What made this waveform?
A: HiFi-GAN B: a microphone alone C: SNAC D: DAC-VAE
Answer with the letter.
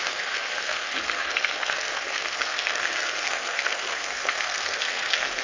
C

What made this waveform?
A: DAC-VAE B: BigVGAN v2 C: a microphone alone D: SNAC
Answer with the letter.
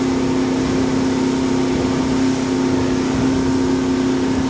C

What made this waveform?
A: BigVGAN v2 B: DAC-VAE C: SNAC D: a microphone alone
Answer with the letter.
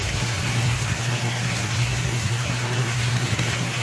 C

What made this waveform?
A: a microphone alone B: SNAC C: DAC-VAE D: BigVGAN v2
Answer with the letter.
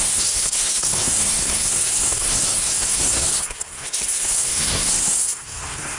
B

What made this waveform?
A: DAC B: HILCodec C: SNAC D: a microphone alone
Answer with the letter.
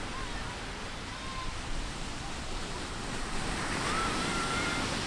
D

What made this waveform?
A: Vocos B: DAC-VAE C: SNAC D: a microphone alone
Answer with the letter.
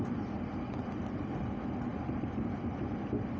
D